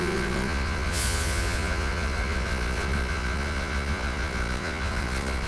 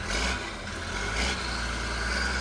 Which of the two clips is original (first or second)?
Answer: second